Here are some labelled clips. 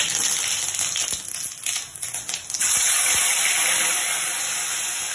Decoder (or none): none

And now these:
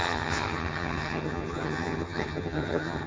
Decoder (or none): vocoder, HiFi-GAN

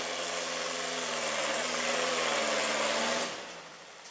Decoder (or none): none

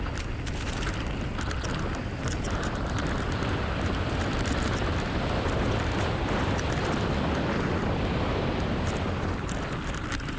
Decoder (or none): vocoder, BigVGAN v2